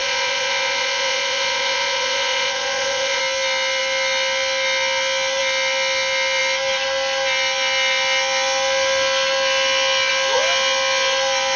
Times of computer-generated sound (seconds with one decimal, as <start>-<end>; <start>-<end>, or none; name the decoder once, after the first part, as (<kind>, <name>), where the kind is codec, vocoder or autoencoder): 0.0-3.2 (vocoder, Vocos)